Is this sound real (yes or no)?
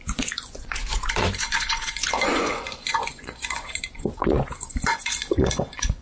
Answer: no